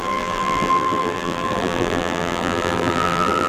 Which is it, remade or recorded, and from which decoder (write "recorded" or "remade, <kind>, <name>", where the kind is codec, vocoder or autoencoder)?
remade, vocoder, BigVGAN v2